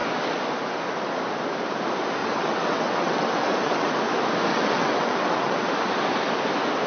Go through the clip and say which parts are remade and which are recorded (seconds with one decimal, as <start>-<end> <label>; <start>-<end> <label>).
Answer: 0.0-2.2 recorded; 2.2-3.9 remade; 3.9-4.5 recorded; 4.5-5.7 remade; 5.7-6.9 recorded